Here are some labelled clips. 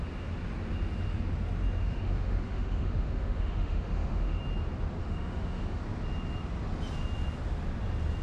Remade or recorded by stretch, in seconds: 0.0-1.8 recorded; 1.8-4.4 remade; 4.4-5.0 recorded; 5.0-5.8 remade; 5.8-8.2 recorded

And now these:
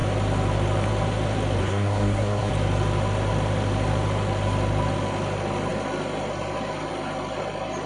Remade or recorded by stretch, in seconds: 0.0-1.6 recorded; 1.6-2.5 remade; 2.5-7.9 recorded